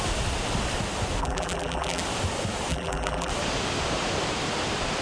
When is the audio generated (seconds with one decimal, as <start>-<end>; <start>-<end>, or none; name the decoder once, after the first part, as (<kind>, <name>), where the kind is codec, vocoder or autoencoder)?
1.2-2.0 (vocoder, BigVGAN v2); 2.7-3.3